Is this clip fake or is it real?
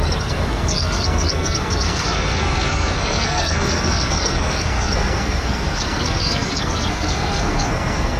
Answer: fake